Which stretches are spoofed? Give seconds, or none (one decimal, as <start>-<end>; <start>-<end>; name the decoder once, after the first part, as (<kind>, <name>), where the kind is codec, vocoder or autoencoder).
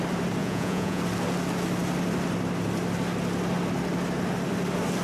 0.4-1.0 (vocoder, Vocos)